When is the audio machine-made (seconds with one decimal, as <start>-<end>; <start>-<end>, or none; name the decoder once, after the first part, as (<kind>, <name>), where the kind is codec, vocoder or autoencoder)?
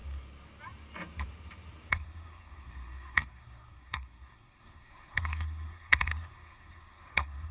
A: 1.9-7.5 (codec, SNAC)